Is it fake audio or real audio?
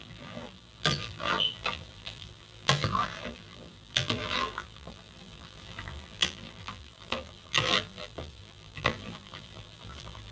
fake